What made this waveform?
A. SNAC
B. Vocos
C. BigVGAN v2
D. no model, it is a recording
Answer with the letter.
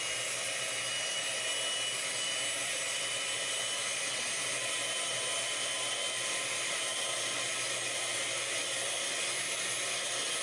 D